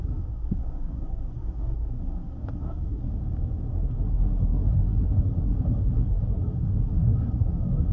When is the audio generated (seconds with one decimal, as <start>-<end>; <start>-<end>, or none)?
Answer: 0.0-3.2; 3.7-7.9